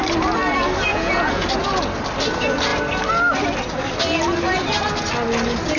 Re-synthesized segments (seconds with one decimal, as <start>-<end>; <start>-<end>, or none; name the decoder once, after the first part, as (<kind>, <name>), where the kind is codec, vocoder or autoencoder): 0.9-1.5 (vocoder, Vocos)